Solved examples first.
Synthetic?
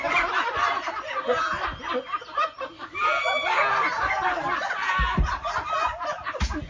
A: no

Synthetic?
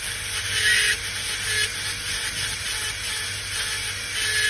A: no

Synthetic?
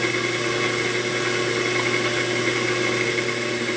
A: no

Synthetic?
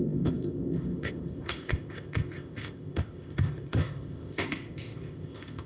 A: yes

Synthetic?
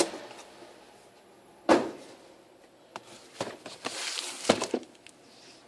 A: no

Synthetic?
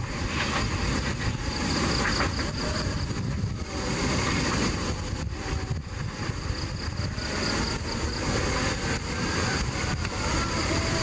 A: no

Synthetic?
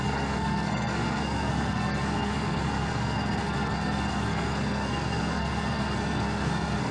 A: yes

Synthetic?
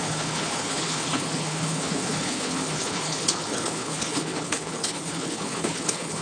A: yes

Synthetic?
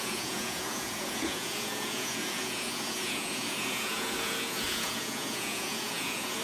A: yes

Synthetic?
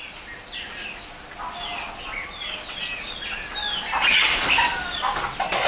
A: no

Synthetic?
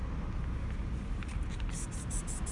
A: no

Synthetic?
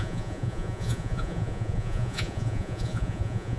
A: yes